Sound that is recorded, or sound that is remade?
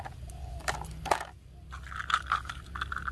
recorded